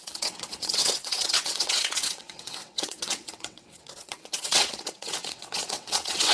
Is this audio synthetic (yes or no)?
yes